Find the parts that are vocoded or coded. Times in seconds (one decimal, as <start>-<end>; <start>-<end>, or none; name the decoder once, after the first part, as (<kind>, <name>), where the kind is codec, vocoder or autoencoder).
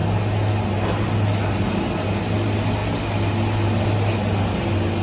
none